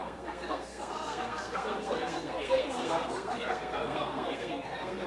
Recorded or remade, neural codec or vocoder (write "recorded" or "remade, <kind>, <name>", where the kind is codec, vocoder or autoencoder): remade, codec, SNAC